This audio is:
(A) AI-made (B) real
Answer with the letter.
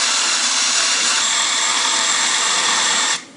A